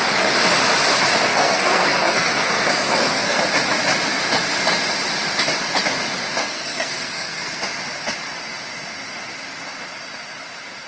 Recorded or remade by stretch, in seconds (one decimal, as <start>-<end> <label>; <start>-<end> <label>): 0.0-1.3 recorded; 1.3-3.4 remade; 3.4-6.4 recorded; 6.4-7.6 remade; 7.6-10.9 recorded